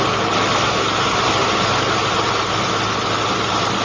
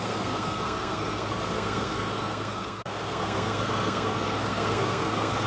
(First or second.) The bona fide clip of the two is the first